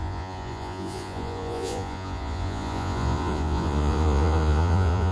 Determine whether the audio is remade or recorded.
remade